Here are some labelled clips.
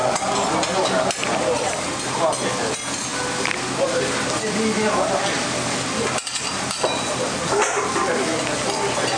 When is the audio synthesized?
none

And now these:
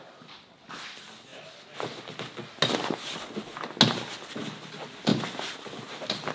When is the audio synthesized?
none

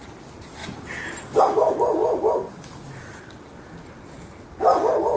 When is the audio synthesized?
none

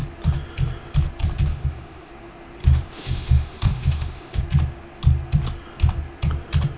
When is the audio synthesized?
1.5-2.1; 2.6-4.4